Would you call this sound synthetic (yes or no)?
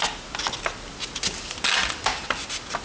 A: no